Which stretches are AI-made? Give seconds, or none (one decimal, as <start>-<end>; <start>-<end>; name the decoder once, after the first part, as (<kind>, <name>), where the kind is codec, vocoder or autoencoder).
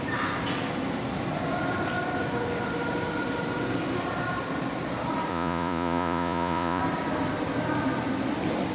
5.3-6.8 (vocoder, Vocos)